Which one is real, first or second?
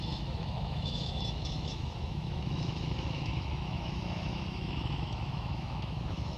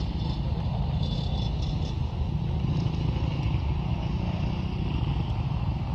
second